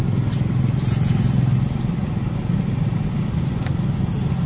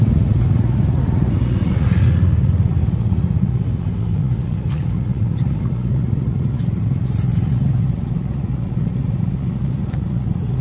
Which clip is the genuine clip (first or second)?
first